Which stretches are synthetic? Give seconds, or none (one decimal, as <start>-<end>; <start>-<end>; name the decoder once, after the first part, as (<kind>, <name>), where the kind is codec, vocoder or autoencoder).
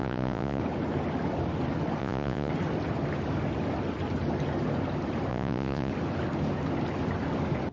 0.0-0.6 (vocoder, Vocos); 2.0-2.5; 5.3-5.9